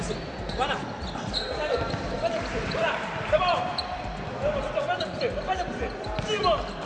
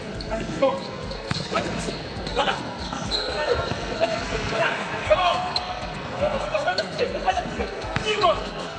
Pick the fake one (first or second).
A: second